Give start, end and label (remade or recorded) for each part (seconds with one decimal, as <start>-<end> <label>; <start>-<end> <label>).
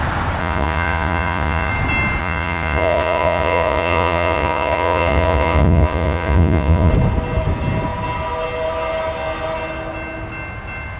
0.0-0.4 recorded; 0.4-1.7 remade; 1.7-2.2 recorded; 2.2-6.9 remade; 6.9-11.0 recorded